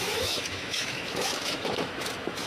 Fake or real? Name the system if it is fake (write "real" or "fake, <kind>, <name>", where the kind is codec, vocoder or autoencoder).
fake, autoencoder, DAC-VAE